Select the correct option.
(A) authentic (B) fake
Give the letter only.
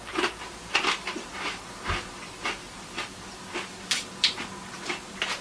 A